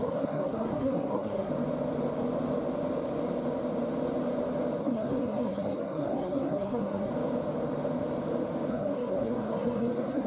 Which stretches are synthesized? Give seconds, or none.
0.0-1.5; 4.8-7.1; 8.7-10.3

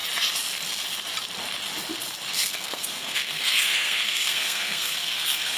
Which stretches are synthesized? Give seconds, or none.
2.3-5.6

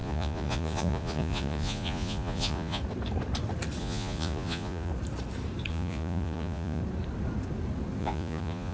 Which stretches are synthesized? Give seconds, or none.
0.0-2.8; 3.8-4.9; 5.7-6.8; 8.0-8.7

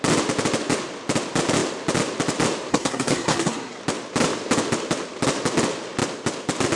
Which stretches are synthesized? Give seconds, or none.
2.7-3.8

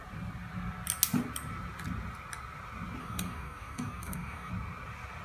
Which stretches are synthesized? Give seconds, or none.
3.0-4.5

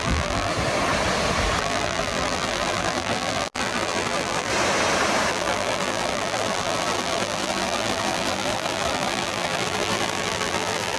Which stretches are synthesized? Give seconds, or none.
0.0-0.5; 1.6-4.5; 5.3-11.0

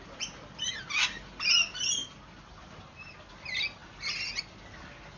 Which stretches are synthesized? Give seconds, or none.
none

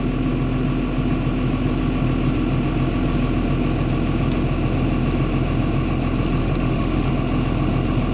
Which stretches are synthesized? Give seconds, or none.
6.4-7.1